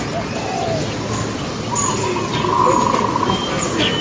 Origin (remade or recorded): recorded